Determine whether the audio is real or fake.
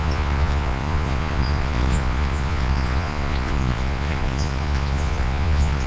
fake